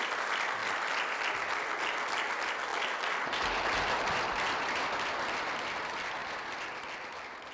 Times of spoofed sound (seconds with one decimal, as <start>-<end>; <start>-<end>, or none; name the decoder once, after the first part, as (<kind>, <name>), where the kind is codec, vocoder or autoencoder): none